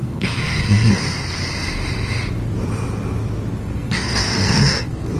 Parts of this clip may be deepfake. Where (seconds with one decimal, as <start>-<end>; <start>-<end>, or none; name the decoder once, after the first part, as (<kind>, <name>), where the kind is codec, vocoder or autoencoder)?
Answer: 0.0-1.4 (codec, SNAC); 3.6-5.2